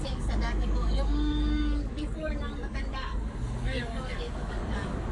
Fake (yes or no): yes